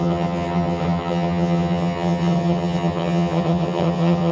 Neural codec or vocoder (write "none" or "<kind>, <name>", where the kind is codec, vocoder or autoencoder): vocoder, HiFi-GAN